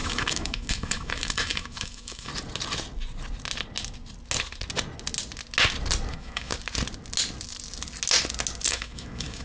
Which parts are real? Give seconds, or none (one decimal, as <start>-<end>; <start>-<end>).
2.3-6.1; 6.5-8.7